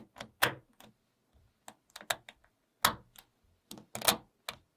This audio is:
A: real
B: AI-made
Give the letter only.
A